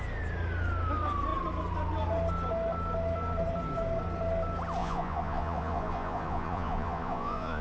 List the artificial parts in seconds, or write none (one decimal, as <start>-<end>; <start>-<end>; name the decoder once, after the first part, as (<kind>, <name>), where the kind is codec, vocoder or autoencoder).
4.8-7.6 (vocoder, Vocos)

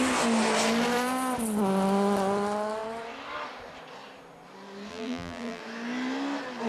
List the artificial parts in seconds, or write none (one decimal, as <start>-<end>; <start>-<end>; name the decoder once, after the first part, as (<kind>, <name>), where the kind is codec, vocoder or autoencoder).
4.9-5.6 (vocoder, BigVGAN v2)

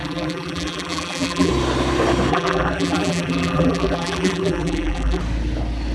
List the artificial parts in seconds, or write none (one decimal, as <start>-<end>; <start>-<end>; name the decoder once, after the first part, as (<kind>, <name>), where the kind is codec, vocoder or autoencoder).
0.0-1.5 (vocoder, BigVGAN v2); 2.3-5.2

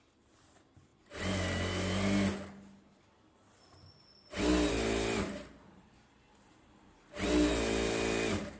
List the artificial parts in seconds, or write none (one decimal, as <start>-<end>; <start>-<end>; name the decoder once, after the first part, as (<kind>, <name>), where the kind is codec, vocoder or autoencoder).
none

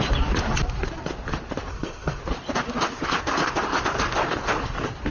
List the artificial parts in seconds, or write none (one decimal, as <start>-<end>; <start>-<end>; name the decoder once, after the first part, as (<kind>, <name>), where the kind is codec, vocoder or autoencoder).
1.7-2.2 (codec, SNAC)

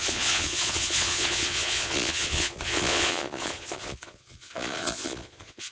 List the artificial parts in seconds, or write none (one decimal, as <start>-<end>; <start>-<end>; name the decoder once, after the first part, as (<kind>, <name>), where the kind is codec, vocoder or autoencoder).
0.0-5.7 (vocoder, Vocos)

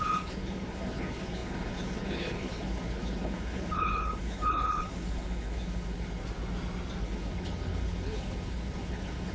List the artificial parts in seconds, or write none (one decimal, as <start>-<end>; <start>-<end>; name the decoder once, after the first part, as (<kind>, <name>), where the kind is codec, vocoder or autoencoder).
0.0-6.2 (codec, HILCodec); 7.0-9.3